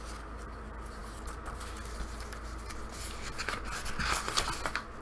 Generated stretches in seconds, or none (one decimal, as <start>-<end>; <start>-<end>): none

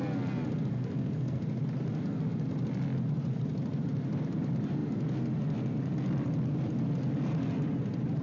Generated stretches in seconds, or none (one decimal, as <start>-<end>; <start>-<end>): 0.7-1.4

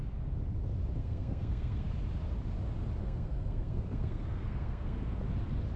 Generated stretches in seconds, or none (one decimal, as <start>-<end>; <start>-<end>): 1.0-1.9; 3.0-5.2

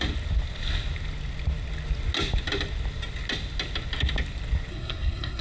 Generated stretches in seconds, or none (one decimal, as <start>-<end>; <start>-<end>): 4.7-5.4

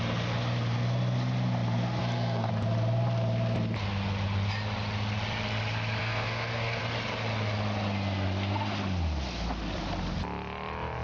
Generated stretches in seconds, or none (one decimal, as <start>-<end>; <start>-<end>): 2.0-2.5; 6.0-6.8

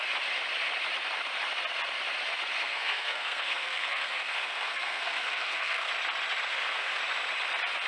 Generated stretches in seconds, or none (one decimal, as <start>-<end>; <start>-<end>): 2.6-5.9; 6.5-7.0